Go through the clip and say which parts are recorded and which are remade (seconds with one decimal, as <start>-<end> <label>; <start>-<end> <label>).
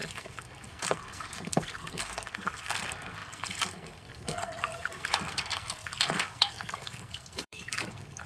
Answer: 0.0-8.3 remade